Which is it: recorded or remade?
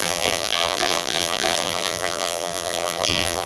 remade